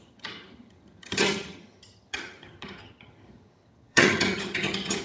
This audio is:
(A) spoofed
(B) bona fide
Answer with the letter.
A